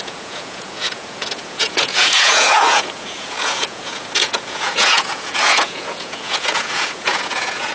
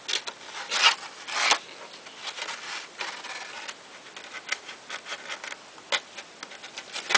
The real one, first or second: second